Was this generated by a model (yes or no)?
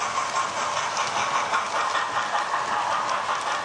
no